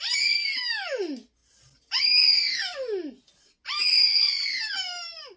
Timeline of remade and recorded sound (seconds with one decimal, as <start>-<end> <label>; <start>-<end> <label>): 0.0-5.4 recorded